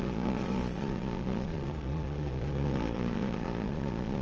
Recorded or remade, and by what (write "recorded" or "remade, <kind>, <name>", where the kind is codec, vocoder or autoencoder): remade, vocoder, Vocos